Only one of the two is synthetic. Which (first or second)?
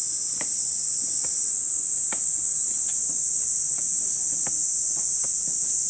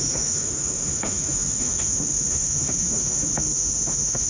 second